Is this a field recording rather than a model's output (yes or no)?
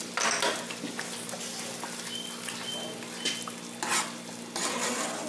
yes